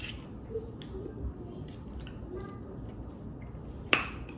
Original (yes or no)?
yes